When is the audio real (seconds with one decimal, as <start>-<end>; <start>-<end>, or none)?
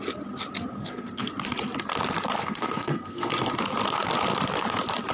0.0-0.8; 1.3-2.4; 3.5-5.1